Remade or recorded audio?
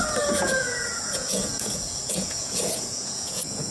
remade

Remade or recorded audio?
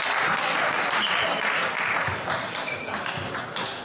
recorded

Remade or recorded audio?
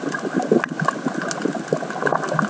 recorded